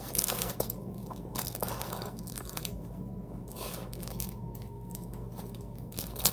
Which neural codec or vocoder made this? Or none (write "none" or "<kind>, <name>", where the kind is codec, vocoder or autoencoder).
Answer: codec, SNAC